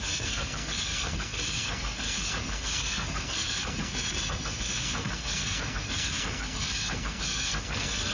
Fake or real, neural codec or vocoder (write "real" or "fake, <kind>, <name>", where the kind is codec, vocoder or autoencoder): fake, codec, SNAC